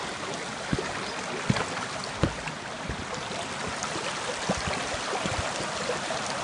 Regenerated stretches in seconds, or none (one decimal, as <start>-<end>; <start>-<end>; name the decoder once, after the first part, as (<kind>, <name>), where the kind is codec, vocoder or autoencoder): none